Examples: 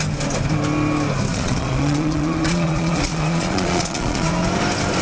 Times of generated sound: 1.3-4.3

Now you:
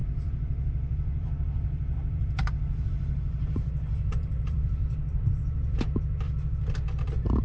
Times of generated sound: 0.0-4.8; 7.0-7.4